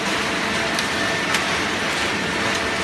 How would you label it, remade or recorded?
recorded